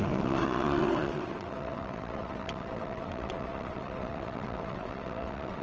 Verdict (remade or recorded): remade